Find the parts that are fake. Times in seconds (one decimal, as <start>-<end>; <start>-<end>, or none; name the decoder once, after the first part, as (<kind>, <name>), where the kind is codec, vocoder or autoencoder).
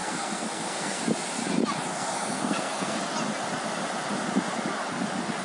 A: 0.0-1.0 (codec, SNAC); 1.9-3.0